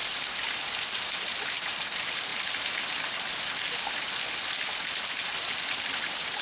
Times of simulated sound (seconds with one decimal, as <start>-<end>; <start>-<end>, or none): 0.0-1.4